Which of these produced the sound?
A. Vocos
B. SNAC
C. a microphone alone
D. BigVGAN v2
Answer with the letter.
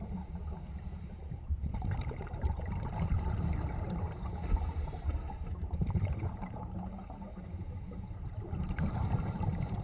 D